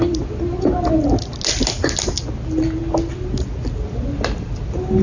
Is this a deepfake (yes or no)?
no